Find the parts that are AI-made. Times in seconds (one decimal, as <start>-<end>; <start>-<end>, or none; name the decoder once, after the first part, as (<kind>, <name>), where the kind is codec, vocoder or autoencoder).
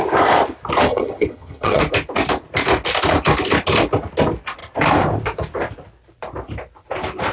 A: 0.9-1.8 (vocoder, HiFi-GAN)